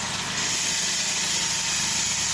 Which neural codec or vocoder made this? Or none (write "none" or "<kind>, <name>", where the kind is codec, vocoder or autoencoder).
none